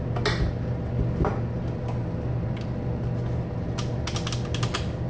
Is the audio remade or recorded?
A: recorded